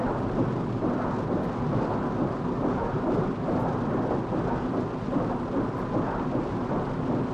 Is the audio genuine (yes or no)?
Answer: yes